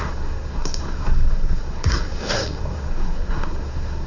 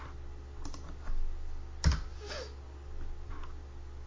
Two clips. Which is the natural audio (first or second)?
second